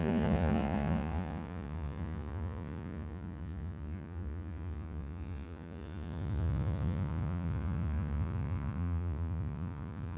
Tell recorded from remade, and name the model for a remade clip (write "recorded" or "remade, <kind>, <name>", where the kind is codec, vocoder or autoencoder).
remade, vocoder, Vocos